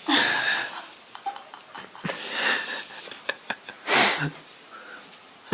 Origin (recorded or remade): recorded